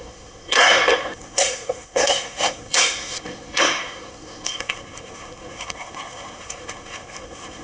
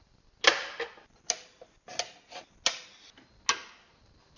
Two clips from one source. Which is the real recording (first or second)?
second